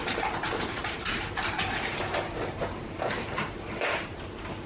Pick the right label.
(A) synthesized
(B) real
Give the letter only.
A